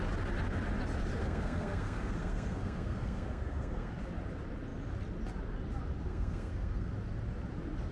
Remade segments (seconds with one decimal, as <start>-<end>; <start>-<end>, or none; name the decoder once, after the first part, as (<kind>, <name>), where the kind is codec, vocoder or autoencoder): 1.2-3.9 (codec, SNAC); 6.1-6.9